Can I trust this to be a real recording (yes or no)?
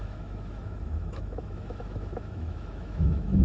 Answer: no